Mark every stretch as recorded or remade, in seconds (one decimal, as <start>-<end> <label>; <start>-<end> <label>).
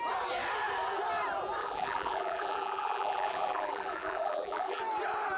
0.0-1.6 recorded; 1.6-4.8 remade; 4.8-5.4 recorded